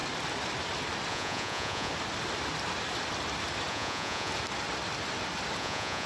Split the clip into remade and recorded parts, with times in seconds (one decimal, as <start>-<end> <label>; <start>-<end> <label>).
0.0-1.1 recorded; 1.1-1.9 remade; 1.9-3.7 recorded; 3.7-4.3 remade; 4.3-5.6 recorded; 5.6-6.1 remade